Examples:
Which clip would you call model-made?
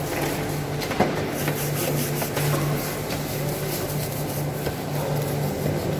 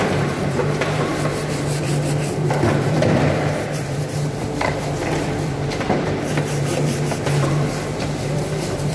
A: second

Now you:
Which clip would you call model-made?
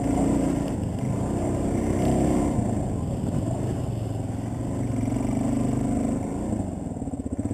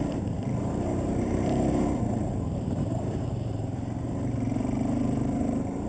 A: second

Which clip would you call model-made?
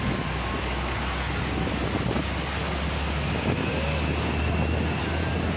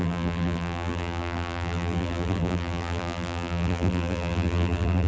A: second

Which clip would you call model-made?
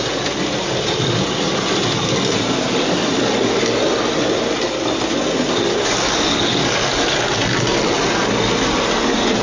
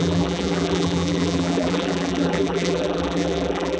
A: second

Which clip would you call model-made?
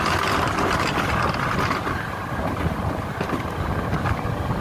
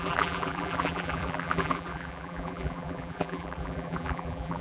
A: second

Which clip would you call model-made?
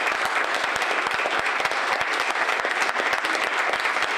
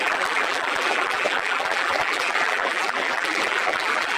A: second